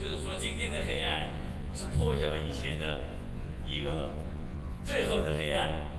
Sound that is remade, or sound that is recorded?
remade